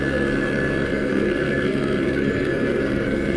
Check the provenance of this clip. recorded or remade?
remade